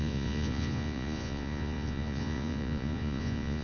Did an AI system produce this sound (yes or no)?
yes